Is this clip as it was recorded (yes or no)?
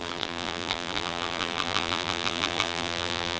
no